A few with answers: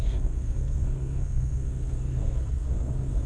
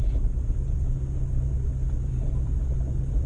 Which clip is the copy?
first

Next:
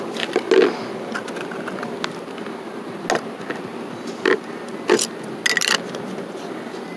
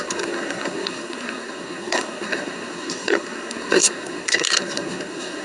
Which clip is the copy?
second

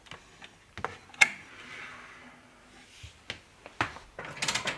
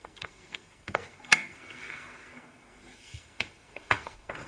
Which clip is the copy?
second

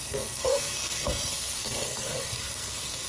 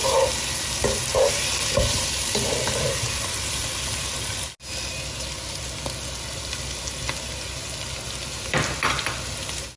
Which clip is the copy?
first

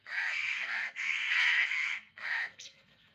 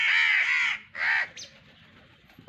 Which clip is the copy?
first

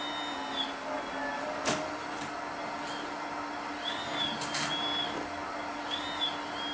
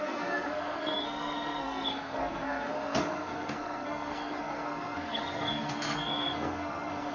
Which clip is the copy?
second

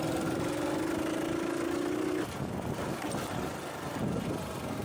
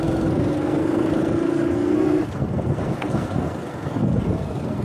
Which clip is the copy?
second